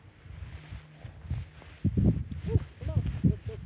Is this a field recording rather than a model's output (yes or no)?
yes